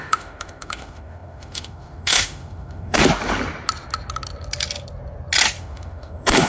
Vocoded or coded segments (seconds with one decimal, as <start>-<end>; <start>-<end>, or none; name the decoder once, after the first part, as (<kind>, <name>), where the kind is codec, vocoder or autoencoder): 0.0-3.0 (autoencoder, DAC-VAE); 5.6-6.5